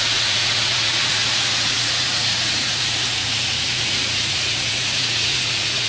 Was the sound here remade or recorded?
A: remade